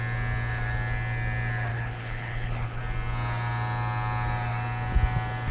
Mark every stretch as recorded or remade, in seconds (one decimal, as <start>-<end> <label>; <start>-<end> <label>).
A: 0.0-1.7 recorded; 1.7-2.8 remade; 2.8-5.5 recorded